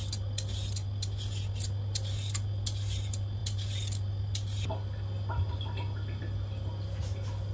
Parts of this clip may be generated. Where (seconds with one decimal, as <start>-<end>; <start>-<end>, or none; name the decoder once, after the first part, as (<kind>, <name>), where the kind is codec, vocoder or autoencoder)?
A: none